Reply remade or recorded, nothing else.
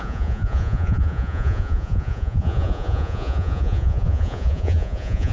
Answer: remade